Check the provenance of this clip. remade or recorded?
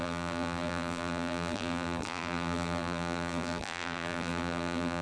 remade